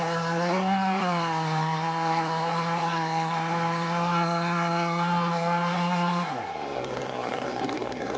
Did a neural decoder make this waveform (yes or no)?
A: yes